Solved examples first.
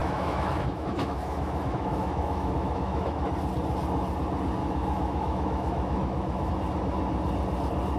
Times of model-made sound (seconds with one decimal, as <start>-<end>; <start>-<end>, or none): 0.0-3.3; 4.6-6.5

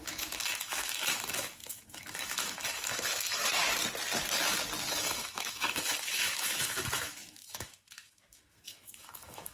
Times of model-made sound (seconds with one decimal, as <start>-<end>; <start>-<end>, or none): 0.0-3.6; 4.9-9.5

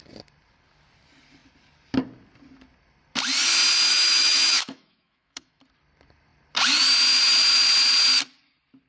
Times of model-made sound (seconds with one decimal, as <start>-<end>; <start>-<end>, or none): 3.9-5.6

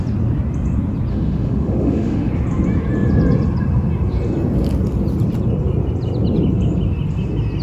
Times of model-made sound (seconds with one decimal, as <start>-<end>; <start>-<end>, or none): 1.1-2.3

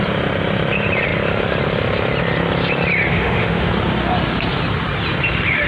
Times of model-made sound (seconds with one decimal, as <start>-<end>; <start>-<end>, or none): 3.1-3.7

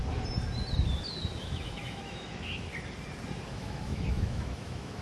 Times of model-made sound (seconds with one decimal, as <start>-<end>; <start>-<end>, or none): 1.4-2.7; 3.5-5.0

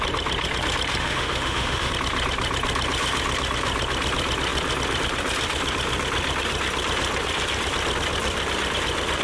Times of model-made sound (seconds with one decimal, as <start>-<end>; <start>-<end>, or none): 1.0-1.9